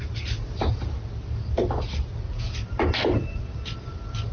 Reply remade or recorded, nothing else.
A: recorded